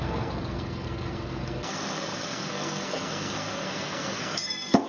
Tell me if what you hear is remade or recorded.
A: remade